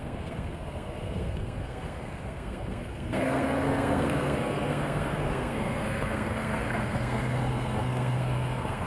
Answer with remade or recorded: remade